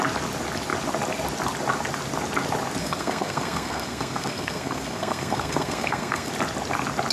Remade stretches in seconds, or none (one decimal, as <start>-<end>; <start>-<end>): 2.8-6.3